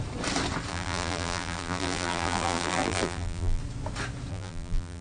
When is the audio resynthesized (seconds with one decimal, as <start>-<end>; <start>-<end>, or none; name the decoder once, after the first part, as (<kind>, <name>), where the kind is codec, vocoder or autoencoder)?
0.7-3.6 (vocoder, BigVGAN v2); 4.3-5.0